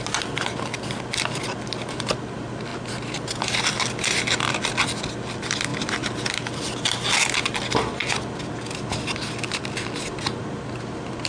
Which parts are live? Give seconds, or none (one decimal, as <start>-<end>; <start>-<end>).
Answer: 0.0-5.7; 6.3-11.3